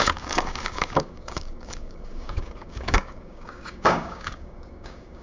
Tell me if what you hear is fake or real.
fake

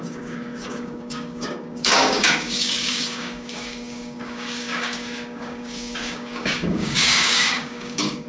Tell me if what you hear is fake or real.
fake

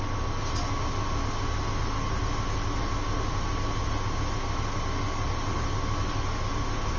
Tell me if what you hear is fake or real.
real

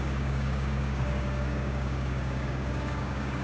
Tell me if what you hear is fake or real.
fake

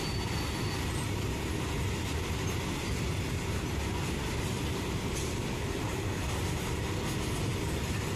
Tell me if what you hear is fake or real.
real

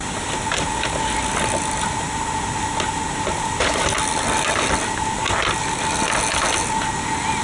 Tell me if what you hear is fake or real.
real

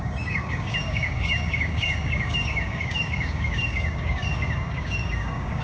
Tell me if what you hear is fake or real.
fake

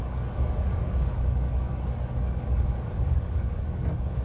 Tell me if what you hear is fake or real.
fake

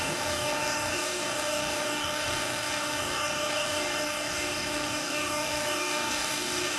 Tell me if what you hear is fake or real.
fake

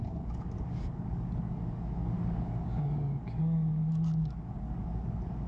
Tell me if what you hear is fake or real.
fake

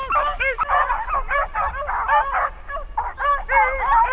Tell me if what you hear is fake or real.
real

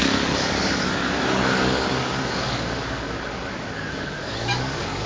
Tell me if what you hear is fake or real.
fake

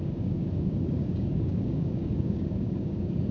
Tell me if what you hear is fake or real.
fake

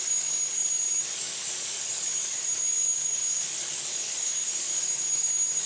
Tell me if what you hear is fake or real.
fake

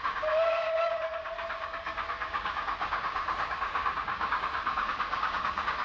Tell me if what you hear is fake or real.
fake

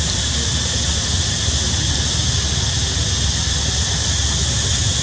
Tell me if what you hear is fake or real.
real